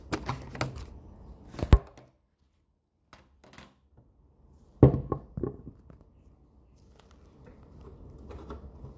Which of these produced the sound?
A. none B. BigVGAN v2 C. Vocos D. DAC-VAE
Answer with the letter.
A